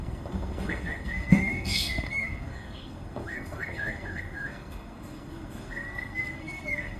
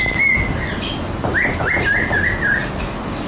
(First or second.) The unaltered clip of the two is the second